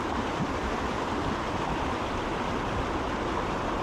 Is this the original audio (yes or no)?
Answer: no